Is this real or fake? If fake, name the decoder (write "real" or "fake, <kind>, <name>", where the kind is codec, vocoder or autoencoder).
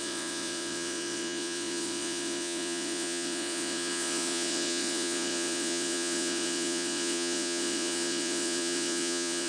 fake, vocoder, Vocos